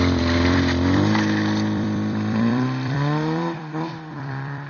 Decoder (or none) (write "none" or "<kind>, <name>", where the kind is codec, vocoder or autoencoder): vocoder, BigVGAN v2